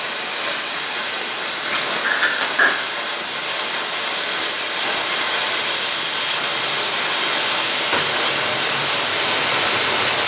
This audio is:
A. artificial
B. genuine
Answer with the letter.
B